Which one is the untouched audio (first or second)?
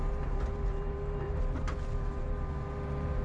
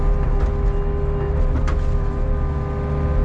second